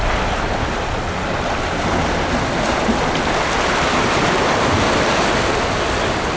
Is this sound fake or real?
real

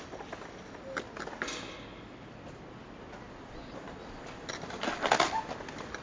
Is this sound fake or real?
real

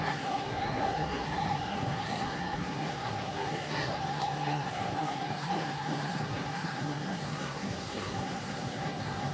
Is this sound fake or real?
fake